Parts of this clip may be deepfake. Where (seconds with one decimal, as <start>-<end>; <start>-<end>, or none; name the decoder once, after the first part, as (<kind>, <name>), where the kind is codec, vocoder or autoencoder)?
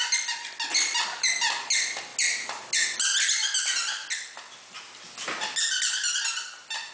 none